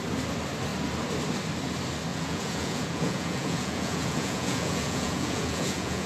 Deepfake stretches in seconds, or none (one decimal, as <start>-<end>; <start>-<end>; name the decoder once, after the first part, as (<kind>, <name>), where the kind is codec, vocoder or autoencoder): 2.1-6.1 (vocoder, Vocos)